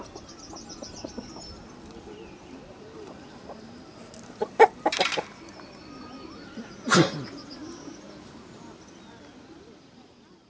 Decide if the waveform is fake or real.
real